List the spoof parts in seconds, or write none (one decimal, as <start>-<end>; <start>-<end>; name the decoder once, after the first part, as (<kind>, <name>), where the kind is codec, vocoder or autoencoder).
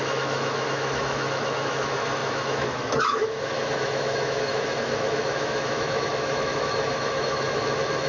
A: 0.0-8.1 (autoencoder, DAC-VAE)